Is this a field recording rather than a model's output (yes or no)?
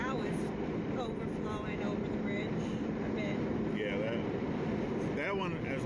yes